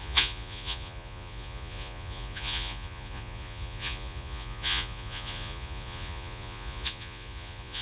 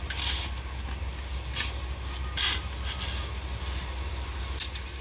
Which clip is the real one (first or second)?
second